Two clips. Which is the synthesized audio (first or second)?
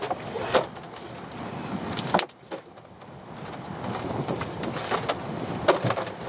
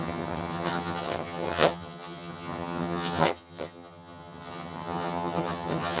second